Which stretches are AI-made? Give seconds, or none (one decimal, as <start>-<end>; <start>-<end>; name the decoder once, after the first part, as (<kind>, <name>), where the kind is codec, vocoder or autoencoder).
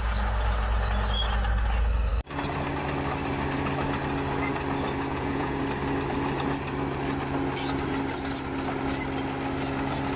5.1-5.6 (vocoder, Vocos)